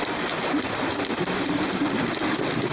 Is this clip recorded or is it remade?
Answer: recorded